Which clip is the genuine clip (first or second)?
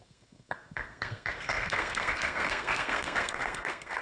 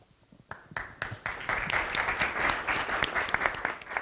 second